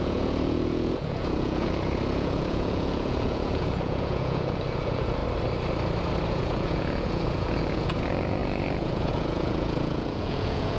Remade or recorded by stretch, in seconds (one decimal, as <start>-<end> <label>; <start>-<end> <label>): 0.0-5.2 remade; 5.2-6.3 recorded; 6.3-10.8 remade